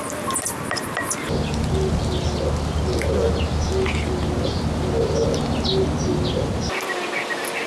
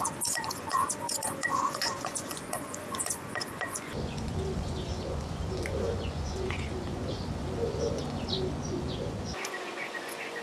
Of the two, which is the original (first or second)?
first